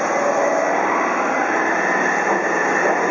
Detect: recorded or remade recorded